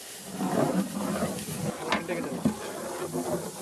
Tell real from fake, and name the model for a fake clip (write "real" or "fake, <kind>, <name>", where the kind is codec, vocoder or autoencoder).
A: real